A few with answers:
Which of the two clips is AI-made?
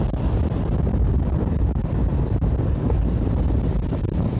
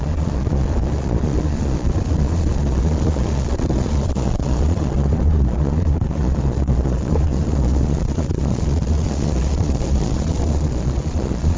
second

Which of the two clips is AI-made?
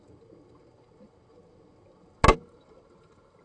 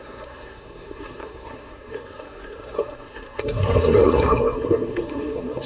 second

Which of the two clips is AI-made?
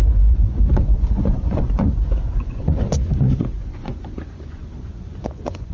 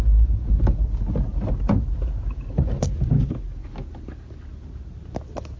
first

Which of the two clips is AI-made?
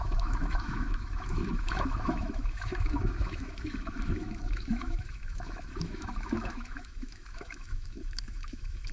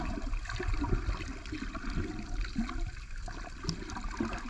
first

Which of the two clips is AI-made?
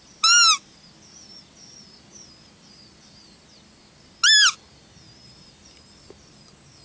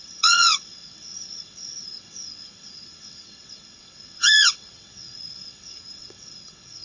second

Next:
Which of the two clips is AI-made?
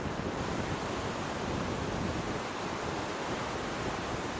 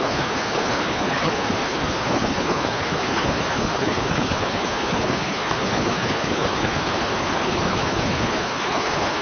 second